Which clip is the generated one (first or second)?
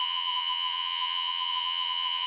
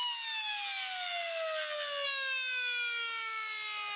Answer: first